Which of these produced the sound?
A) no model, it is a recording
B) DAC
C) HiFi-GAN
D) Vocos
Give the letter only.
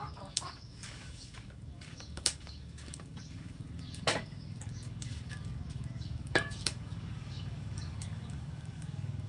B